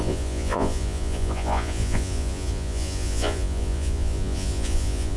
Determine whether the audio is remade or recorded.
remade